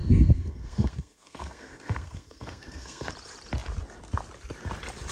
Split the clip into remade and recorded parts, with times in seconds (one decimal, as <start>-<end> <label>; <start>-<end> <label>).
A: 0.0-3.1 remade; 3.1-5.1 recorded